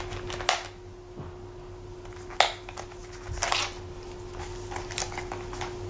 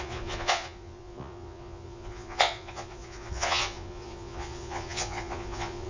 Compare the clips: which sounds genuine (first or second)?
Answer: first